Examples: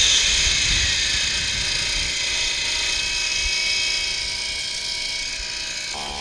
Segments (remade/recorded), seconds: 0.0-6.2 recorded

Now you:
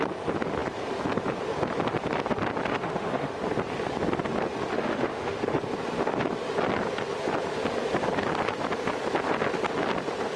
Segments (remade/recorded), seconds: 0.0-2.7 recorded; 2.7-3.3 remade; 3.3-4.7 recorded; 4.7-5.6 remade; 5.6-10.4 recorded

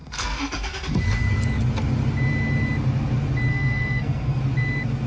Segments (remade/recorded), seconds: 0.0-1.0 remade; 1.0-3.5 recorded; 3.5-4.4 remade; 4.4-5.1 recorded

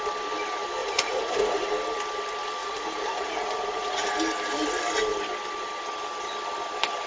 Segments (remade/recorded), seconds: 0.0-0.8 recorded; 0.8-1.6 remade; 1.6-2.6 recorded; 2.6-4.1 remade; 4.1-7.1 recorded

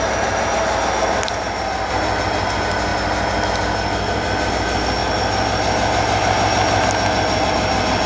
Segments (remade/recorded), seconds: 0.0-8.1 recorded

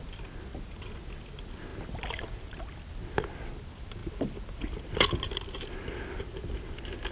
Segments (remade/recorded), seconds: 0.0-7.1 recorded

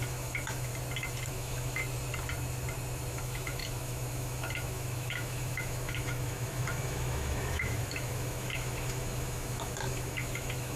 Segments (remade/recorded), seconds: 0.0-0.7 remade; 0.7-1.3 recorded; 1.3-1.8 remade; 1.8-3.1 recorded; 3.1-10.8 remade